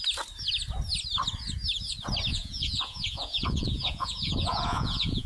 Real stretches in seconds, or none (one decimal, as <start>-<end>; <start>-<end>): 0.0-2.3